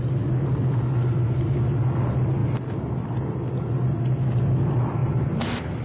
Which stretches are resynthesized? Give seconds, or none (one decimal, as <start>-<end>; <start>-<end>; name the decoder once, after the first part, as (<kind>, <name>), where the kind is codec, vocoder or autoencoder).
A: none